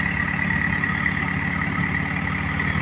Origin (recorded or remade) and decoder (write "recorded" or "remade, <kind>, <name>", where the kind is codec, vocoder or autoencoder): recorded